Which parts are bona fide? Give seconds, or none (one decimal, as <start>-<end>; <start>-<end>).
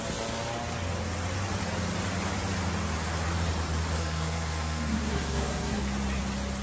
0.0-4.0; 5.8-6.6